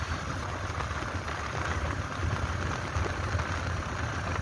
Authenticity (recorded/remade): recorded